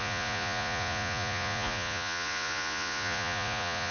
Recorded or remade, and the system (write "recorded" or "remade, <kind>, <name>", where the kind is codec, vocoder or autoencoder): remade, vocoder, Vocos